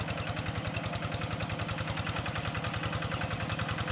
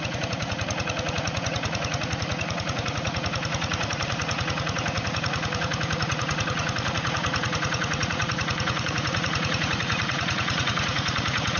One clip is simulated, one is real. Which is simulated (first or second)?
second